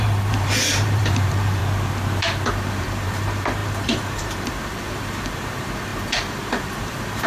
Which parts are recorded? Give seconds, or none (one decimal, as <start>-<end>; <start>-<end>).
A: 1.6-2.5